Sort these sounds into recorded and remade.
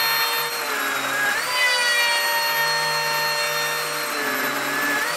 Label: recorded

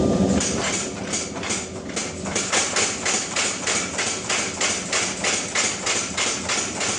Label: recorded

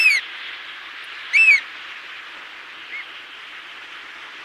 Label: recorded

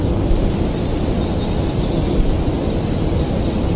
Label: recorded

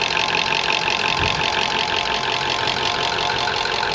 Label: recorded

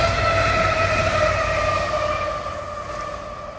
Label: recorded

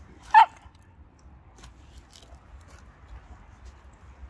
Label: recorded